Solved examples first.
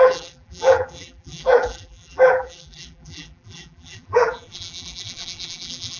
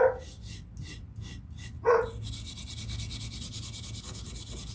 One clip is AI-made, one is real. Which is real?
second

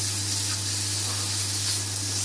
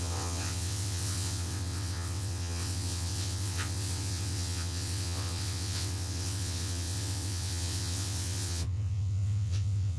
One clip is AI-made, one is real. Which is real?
first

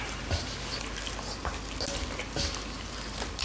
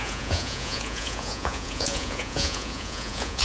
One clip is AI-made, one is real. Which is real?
first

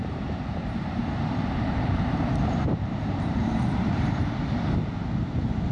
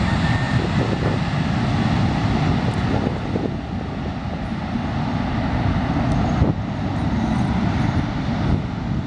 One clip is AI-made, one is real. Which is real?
second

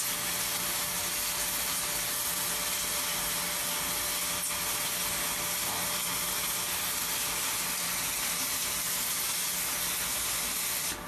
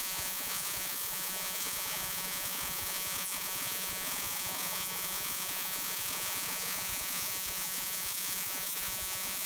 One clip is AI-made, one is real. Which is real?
first